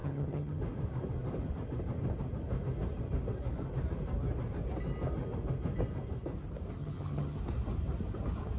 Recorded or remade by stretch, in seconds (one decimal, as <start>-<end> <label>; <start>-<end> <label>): 0.0-0.6 remade; 0.6-6.8 recorded; 6.8-7.4 remade; 7.4-8.6 recorded